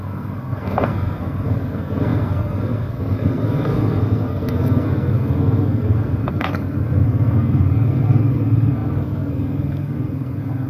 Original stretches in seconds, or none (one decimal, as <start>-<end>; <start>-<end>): none